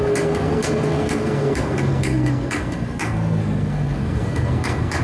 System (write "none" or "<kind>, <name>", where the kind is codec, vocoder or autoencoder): codec, SNAC